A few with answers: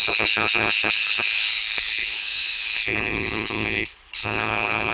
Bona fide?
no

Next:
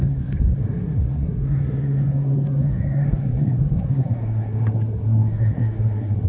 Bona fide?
no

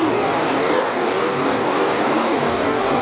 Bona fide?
no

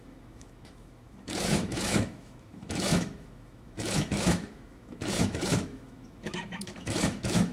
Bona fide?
no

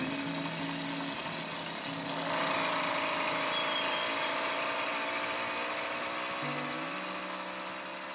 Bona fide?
yes